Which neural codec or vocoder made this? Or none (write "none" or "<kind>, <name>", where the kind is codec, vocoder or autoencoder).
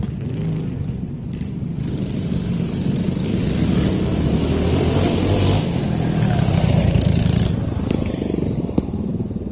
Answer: none